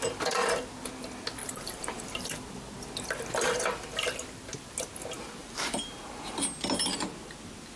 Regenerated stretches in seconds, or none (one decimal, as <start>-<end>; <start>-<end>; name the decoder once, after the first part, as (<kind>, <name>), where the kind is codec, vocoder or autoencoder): 1.4-2.2 (vocoder, BigVGAN v2); 5.4-6.4